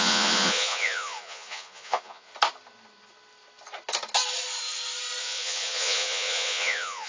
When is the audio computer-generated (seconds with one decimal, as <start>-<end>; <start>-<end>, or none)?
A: 0.0-2.3; 5.2-7.1